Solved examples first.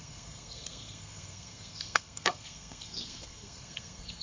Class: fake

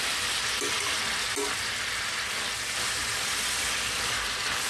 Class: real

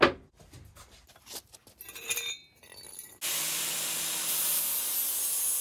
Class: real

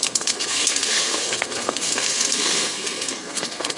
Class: fake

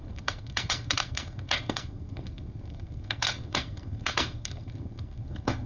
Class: fake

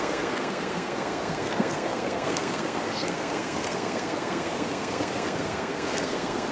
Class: fake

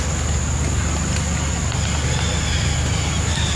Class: real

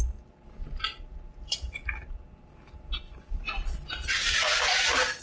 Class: real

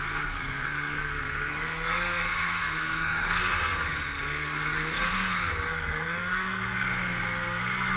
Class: fake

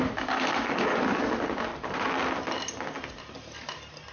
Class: real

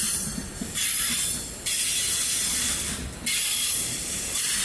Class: real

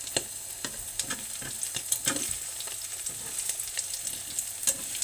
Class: real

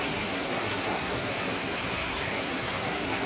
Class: fake